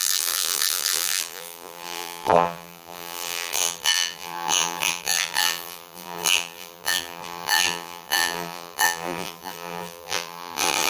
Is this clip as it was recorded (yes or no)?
no